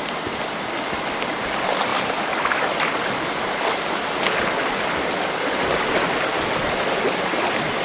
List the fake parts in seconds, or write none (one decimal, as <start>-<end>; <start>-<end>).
none